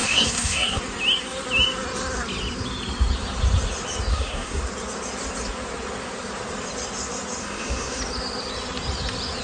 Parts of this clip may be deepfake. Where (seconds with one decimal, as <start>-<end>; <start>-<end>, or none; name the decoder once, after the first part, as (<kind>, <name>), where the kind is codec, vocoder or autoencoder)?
0.0-0.8 (codec, SNAC); 4.1-4.6; 7.4-8.0